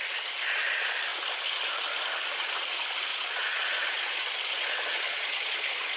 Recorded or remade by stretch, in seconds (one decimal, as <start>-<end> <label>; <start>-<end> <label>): 0.0-3.1 recorded; 3.1-6.0 remade